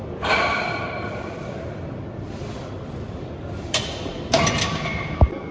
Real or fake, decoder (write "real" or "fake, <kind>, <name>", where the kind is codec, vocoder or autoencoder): fake, vocoder, BigVGAN v2